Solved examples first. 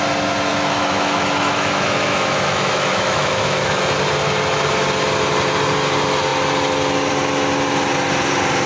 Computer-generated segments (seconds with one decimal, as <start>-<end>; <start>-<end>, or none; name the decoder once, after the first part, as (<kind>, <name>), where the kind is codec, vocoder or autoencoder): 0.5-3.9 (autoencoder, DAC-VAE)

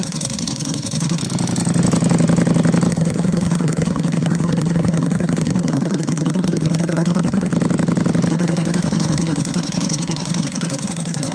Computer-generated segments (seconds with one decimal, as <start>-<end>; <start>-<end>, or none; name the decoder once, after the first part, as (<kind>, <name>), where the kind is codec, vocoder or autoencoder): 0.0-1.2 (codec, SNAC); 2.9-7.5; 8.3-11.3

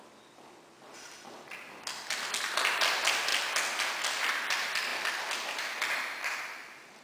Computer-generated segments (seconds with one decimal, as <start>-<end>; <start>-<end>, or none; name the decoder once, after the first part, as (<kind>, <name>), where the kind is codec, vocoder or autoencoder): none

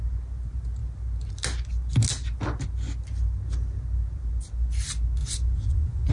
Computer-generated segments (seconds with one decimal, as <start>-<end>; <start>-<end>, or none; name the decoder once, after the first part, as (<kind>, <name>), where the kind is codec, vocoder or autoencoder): 5.2-6.1 (vocoder, Vocos)